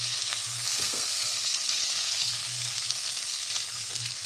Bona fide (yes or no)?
no